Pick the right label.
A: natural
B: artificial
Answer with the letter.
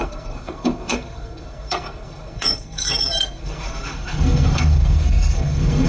B